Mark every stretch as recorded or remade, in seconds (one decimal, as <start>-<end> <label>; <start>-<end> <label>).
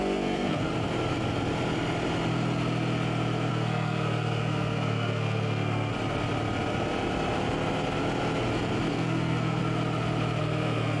0.0-0.7 remade; 0.7-3.5 recorded; 3.5-5.9 remade; 5.9-8.9 recorded; 8.9-9.6 remade; 9.6-10.4 recorded; 10.4-11.0 remade